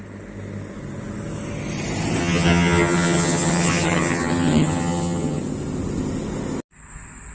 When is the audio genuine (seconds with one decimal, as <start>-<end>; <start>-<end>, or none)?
0.0-2.2; 5.4-7.3